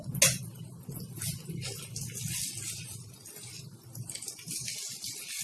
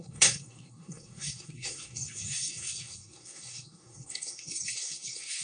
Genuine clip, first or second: first